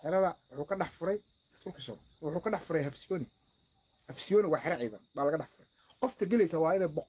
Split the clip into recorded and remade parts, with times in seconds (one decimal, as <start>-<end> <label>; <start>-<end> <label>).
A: 0.0-7.1 recorded